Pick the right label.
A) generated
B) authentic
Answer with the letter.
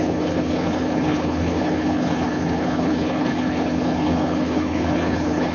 A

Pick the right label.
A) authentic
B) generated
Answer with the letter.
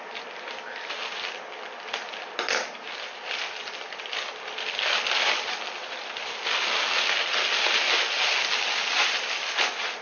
A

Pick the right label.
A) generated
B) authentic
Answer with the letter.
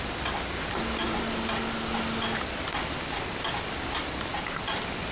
B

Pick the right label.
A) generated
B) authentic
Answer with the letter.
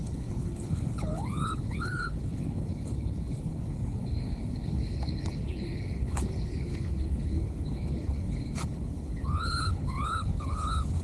A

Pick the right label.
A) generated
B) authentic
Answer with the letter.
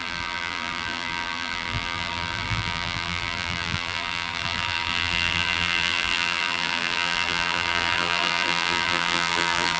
A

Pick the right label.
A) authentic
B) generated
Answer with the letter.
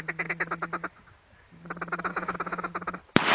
A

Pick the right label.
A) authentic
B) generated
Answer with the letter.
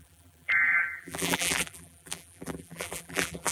B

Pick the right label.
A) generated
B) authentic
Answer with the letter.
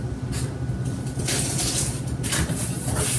B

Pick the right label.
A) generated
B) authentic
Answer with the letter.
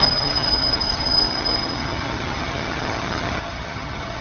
A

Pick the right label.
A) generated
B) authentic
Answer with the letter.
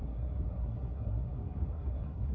A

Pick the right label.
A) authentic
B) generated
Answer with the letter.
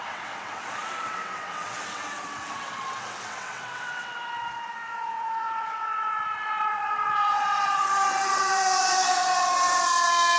B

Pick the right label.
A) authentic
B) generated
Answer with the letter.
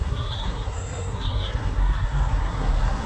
B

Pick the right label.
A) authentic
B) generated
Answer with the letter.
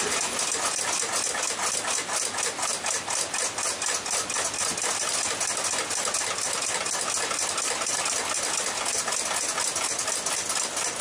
A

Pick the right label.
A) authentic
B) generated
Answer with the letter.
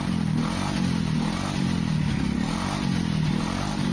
A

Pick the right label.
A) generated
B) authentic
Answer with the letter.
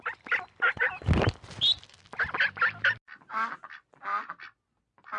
B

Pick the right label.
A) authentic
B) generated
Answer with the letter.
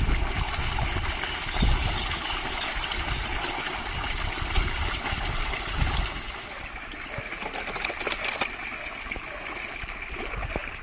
A